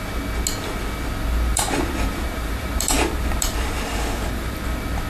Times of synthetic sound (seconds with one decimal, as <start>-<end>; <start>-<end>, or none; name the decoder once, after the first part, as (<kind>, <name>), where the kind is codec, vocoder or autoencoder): 1.5-4.6 (vocoder, BigVGAN v2)